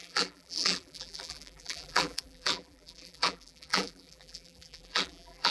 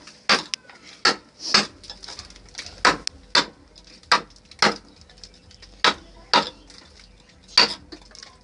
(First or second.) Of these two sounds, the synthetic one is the first